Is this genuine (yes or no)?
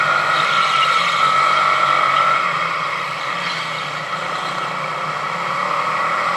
yes